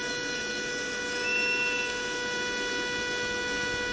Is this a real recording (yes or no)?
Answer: yes